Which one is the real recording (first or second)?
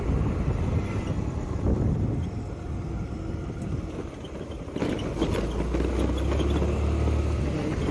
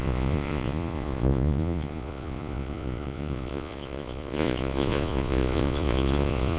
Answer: first